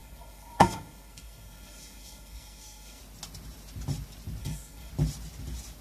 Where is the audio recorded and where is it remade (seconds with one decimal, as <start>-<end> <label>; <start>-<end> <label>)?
0.0-3.0 remade; 3.0-4.4 recorded; 4.4-4.9 remade; 4.9-5.8 recorded